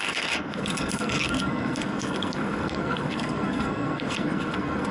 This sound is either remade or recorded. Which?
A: remade